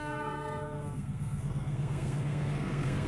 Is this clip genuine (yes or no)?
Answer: no